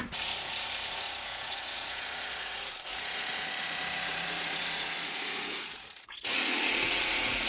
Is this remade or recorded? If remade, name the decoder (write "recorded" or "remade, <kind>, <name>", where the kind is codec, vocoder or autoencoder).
remade, vocoder, Vocos